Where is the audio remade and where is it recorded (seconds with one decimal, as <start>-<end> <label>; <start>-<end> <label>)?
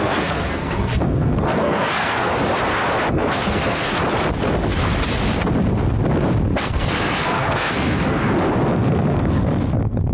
0.0-2.3 remade; 2.3-3.1 recorded; 3.1-4.0 remade; 4.0-6.6 recorded; 6.6-8.2 remade; 8.2-8.7 recorded; 8.7-10.1 remade